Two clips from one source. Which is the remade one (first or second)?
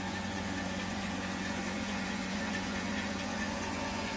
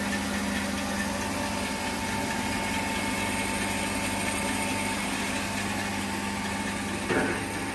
first